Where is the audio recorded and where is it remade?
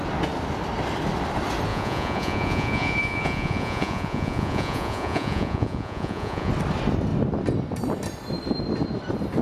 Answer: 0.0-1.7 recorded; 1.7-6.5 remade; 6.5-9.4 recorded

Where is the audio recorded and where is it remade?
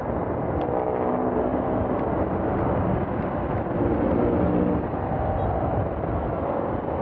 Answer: 0.0-7.0 recorded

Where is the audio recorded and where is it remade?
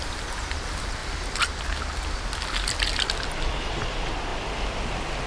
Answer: 0.0-1.0 remade; 1.0-3.3 recorded; 3.3-4.3 remade; 4.3-5.3 recorded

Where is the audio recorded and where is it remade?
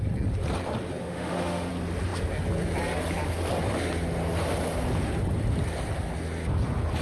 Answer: 0.0-1.0 recorded; 1.0-1.7 remade; 1.7-7.0 recorded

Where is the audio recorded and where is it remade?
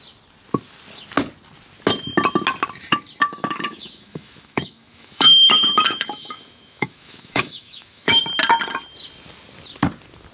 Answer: 0.0-3.3 recorded; 3.3-8.2 remade; 8.2-10.3 recorded